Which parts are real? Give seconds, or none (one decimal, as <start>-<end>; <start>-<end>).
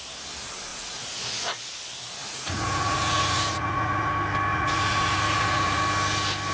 0.0-0.7; 1.7-2.2; 4.1-4.5; 5.8-6.5